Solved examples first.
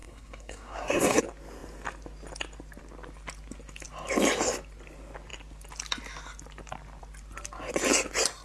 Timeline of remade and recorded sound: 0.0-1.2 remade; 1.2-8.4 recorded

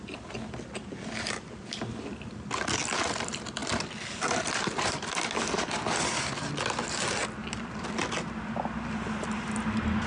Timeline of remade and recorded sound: 0.0-10.1 recorded

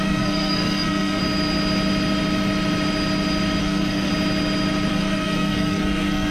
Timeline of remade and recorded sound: 0.0-1.2 remade; 1.2-3.6 recorded; 3.6-4.1 remade; 4.1-4.9 recorded; 4.9-6.3 remade